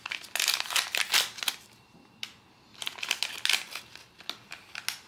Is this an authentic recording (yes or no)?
yes